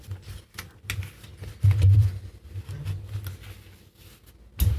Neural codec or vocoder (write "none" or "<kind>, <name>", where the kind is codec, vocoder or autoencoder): none